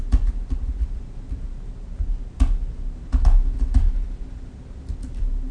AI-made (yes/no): no